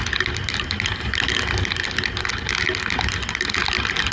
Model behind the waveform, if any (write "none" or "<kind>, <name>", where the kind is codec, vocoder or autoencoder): none